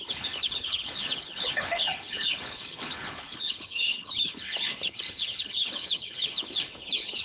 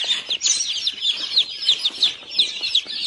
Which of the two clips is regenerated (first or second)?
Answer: first